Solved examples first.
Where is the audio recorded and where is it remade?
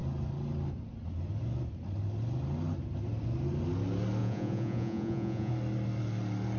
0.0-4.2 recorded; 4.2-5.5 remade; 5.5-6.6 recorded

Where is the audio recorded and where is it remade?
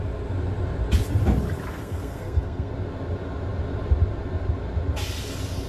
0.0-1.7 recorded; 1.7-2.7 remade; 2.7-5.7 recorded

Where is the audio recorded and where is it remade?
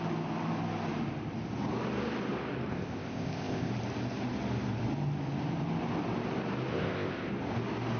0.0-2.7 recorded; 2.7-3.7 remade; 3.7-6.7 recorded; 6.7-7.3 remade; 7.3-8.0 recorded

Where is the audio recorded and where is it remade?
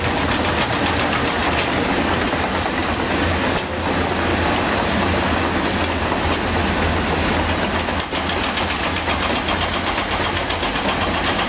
0.0-4.3 recorded; 4.3-5.2 remade; 5.2-11.5 recorded